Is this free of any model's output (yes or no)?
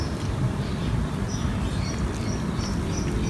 yes